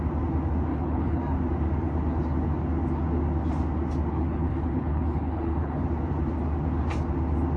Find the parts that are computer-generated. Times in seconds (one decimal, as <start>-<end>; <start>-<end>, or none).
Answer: 0.7-1.2; 4.1-5.8